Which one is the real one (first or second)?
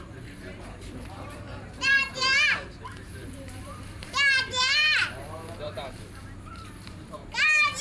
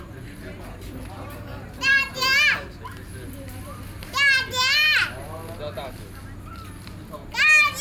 second